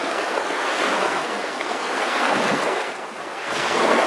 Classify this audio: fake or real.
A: fake